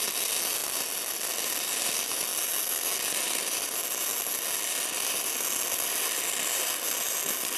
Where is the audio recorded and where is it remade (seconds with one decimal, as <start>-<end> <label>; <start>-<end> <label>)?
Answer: 0.0-7.6 recorded